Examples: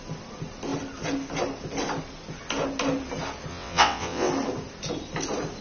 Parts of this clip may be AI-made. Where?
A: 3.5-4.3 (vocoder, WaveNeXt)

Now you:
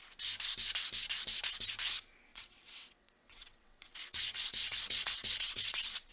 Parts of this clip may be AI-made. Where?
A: 2.3-6.1 (vocoder, WaveNeXt)

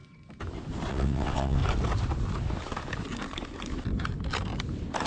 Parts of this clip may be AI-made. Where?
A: 0.9-1.6 (vocoder, WaveNeXt)

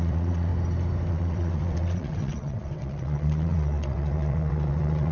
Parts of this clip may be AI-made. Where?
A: 0.0-0.5 (vocoder, WaveNeXt); 1.1-5.1

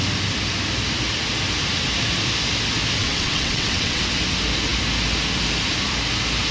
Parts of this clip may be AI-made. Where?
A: 3.0-4.0 (vocoder, WaveNeXt)

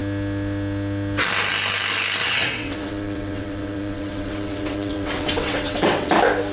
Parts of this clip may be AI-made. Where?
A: 2.2-6.1 (vocoder, WaveNeXt)